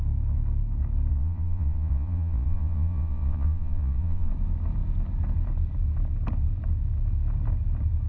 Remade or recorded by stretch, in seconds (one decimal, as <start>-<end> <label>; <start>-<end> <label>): 0.0-1.1 recorded; 1.1-4.3 remade; 4.3-8.1 recorded